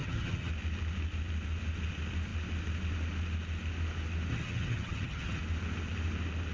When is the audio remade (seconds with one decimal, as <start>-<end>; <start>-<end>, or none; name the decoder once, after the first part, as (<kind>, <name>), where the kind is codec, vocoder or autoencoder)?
0.0-0.5 (vocoder, HiFi-GAN); 4.3-5.4